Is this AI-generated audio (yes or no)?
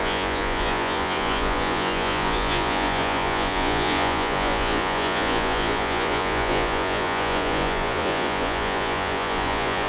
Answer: yes